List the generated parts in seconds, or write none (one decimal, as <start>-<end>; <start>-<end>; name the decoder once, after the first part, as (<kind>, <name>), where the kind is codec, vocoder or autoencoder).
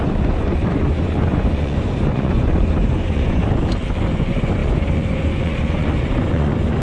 0.0-3.4 (vocoder, Vocos); 4.1-6.8